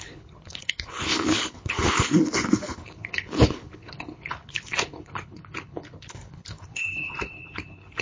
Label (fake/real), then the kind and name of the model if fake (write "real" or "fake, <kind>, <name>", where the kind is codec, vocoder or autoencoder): fake, codec, HILCodec